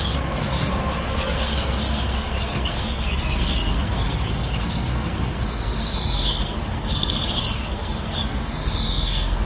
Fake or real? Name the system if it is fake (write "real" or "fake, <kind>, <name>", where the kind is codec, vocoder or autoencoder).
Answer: fake, codec, SNAC